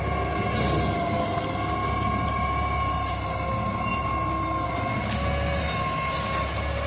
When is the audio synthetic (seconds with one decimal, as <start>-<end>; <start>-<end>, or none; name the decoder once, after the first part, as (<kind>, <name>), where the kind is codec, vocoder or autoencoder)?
none

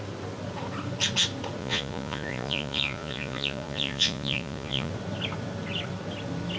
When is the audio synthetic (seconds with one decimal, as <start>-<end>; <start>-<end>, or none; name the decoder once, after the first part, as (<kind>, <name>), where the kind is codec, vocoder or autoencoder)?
1.6-4.9 (vocoder, Vocos)

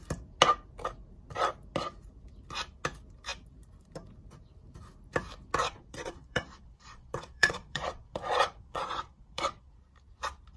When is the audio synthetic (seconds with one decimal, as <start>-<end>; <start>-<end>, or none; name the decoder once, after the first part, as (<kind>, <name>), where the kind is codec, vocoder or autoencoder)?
5.6-9.8 (vocoder, Vocos)

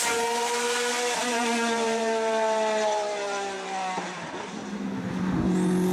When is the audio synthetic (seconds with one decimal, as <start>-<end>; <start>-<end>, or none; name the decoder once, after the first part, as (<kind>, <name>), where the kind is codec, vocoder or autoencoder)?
1.3-4.5 (vocoder, BigVGAN v2)

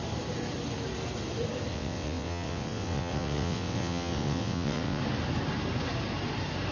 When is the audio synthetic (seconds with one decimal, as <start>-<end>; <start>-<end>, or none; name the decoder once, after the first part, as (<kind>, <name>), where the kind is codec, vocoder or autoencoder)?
1.7-5.0 (vocoder, WaveNeXt)

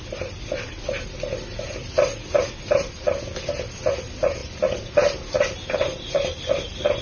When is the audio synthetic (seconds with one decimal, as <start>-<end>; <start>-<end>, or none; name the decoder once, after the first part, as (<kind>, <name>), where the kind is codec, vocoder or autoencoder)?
none

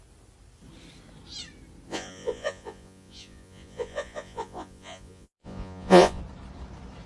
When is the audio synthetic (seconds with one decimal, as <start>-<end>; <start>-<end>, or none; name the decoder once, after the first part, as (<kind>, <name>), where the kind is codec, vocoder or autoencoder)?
1.9-6.2 (vocoder, Vocos)

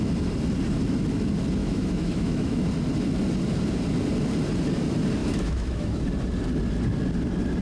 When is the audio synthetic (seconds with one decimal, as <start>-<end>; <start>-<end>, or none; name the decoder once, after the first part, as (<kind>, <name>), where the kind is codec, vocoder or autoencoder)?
1.6-2.6 (autoencoder, DAC-VAE); 5.2-6.0